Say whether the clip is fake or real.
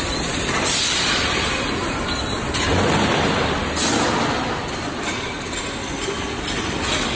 real